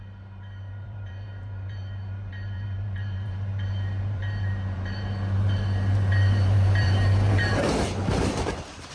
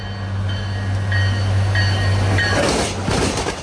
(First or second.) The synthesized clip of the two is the first